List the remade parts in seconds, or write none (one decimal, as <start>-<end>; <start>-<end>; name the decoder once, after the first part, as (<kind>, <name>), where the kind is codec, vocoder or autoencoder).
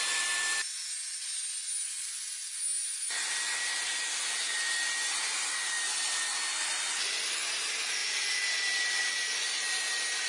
none